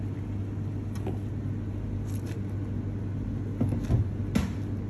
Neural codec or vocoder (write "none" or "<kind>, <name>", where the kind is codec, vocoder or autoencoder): none